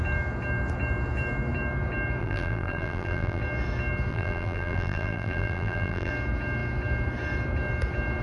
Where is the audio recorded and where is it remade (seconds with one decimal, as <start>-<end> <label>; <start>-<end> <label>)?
0.0-2.2 recorded; 2.2-3.4 remade; 3.4-4.1 recorded; 4.1-6.1 remade; 6.1-8.2 recorded